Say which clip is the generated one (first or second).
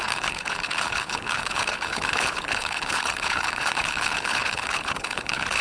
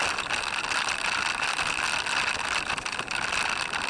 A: first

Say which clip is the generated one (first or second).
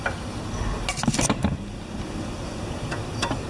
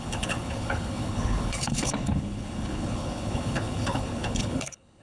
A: second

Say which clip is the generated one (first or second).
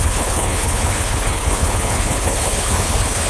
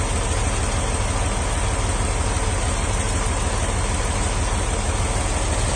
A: first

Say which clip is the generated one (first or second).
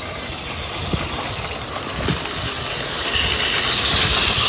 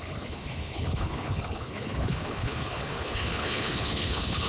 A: second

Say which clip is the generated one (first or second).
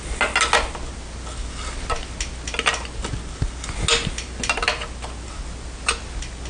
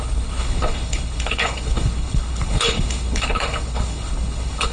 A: second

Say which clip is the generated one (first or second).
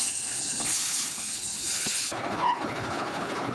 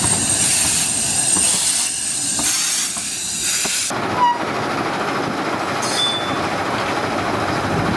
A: first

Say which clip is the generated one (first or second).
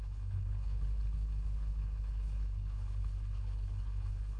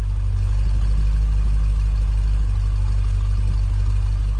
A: first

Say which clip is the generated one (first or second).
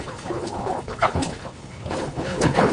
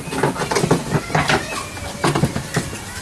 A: first